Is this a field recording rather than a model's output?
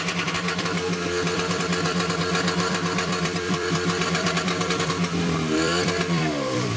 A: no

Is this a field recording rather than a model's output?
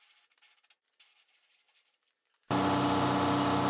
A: yes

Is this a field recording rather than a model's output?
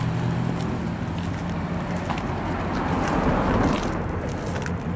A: yes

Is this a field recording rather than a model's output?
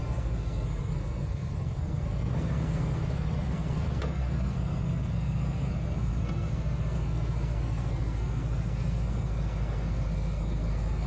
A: no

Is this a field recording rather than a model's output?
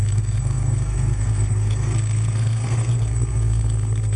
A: no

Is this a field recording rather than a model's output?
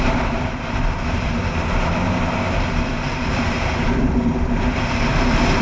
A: no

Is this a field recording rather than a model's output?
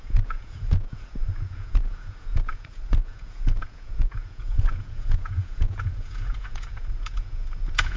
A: no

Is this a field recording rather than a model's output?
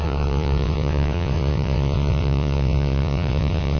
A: no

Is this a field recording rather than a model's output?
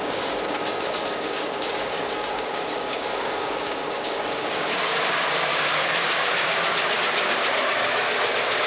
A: no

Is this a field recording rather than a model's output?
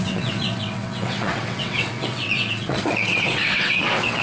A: no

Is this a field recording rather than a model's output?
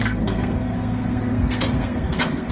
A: no